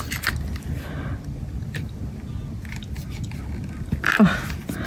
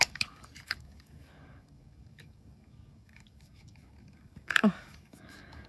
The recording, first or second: first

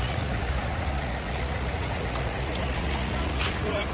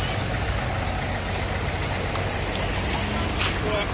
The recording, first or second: second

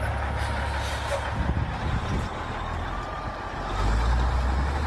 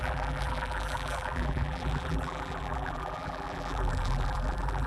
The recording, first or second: first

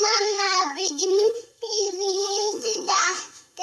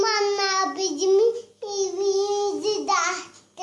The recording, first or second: second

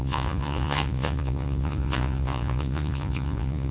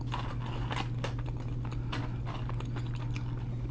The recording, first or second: second